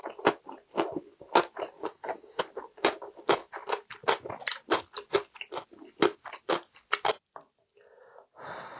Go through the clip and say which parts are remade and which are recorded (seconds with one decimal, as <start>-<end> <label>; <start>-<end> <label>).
0.0-1.8 recorded; 1.8-2.4 remade; 2.4-8.8 recorded